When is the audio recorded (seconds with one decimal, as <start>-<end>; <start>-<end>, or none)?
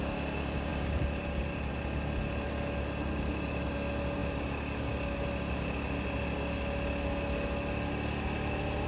0.0-0.7; 1.7-8.9